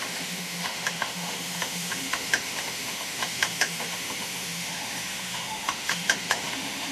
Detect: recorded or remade remade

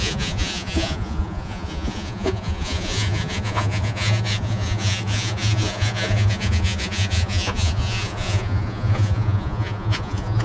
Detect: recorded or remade remade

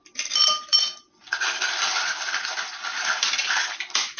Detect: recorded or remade recorded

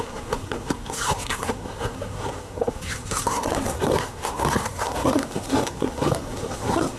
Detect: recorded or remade remade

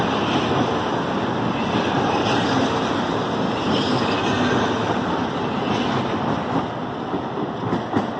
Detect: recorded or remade recorded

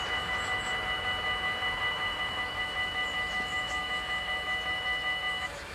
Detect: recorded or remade remade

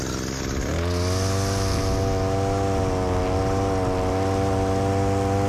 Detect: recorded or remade recorded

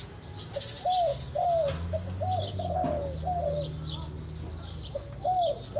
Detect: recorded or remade recorded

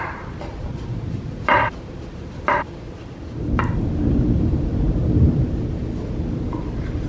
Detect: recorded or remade remade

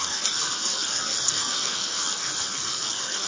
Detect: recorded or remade remade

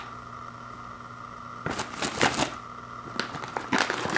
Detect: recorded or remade recorded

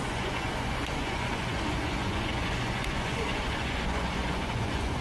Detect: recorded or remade remade